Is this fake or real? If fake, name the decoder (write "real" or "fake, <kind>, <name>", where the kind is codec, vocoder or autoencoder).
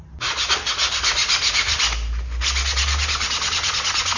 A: real